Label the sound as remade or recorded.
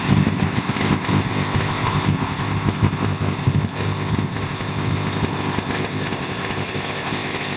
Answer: remade